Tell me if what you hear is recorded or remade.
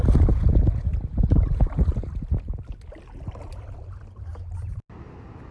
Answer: recorded